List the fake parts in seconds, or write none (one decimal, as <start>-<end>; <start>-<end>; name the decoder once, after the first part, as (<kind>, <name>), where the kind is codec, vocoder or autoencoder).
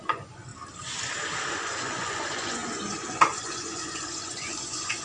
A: 0.0-0.5 (vocoder, Vocos); 1.5-5.0